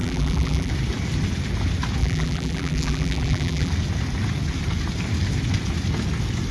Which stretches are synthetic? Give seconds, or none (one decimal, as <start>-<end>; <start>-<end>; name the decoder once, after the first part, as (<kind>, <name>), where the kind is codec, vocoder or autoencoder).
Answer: 0.0-0.7 (vocoder, BigVGAN v2); 2.0-3.7